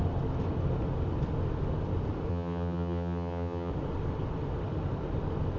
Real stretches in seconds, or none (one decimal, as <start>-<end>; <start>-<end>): 0.0-2.3; 3.7-5.6